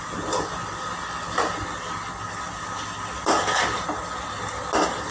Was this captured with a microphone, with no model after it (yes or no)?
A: yes